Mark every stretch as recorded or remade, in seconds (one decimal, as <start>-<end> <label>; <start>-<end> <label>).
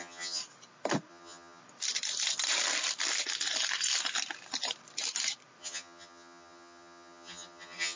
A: 0.0-0.4 remade; 0.4-1.1 recorded; 1.1-1.6 remade; 1.6-5.6 recorded; 5.6-8.0 remade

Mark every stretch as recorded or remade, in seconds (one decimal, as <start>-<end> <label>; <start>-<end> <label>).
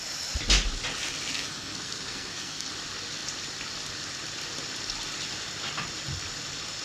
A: 0.0-1.3 recorded; 1.3-2.7 remade; 2.7-6.8 recorded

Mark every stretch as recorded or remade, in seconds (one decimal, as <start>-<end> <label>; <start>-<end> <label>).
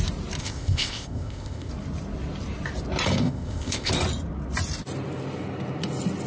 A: 0.0-0.4 recorded; 0.4-1.7 remade; 1.7-3.2 recorded; 3.2-3.9 remade; 3.9-6.3 recorded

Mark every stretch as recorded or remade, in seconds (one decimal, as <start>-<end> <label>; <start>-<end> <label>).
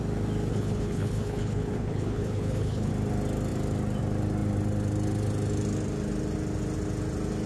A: 0.0-0.5 recorded; 0.5-2.9 remade; 2.9-7.5 recorded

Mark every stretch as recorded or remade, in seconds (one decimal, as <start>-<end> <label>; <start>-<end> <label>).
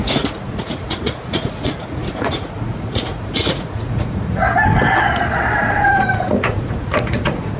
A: 0.0-4.4 remade; 4.4-5.7 recorded; 5.7-7.6 remade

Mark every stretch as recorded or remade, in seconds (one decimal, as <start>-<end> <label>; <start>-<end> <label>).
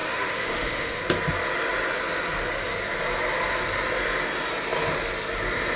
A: 0.0-1.0 remade; 1.0-5.8 recorded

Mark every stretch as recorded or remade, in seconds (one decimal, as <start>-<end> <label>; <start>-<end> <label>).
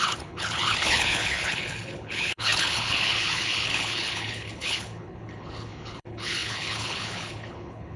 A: 0.0-8.0 remade